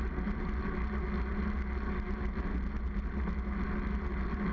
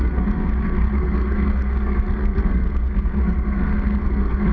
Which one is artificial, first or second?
second